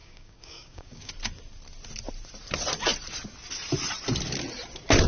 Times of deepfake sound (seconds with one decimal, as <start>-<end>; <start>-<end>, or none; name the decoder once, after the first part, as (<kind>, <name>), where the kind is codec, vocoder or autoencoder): 0.0-1.1 (codec, DAC)